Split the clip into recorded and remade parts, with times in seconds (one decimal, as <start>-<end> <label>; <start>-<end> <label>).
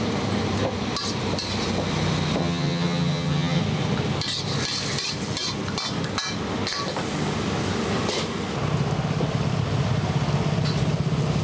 0.0-2.4 recorded; 2.4-3.6 remade; 3.6-11.4 recorded